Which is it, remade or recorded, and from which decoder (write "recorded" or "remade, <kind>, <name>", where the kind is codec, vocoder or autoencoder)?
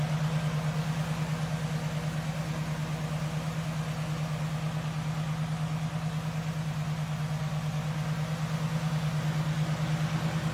recorded